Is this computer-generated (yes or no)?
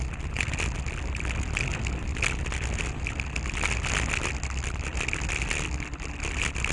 no